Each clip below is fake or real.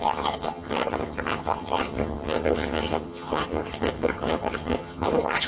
fake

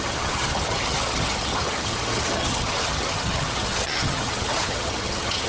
fake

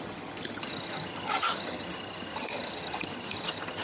fake